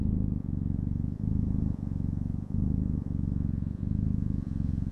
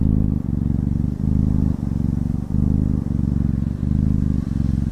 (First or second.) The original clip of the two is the second